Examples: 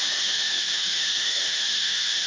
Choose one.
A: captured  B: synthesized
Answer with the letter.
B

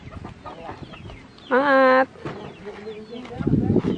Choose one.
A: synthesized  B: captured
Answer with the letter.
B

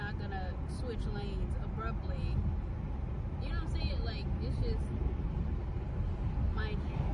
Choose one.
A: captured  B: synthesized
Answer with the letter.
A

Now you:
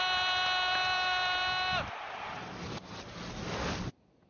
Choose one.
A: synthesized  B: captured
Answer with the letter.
B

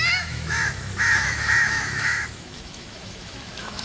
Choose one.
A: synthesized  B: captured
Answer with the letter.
A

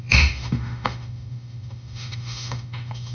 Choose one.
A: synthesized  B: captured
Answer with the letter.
A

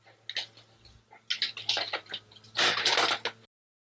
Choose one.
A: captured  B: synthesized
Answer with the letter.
A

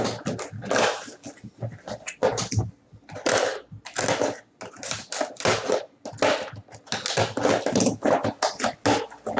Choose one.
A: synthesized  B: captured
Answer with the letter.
B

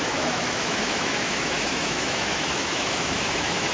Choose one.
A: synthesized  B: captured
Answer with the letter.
A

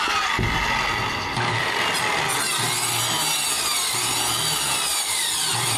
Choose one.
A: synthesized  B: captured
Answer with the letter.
B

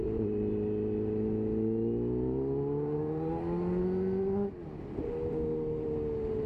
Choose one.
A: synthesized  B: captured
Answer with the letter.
B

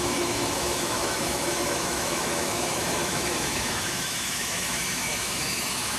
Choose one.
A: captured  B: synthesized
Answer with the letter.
B